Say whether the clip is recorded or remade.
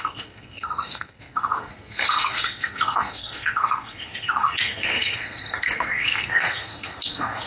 remade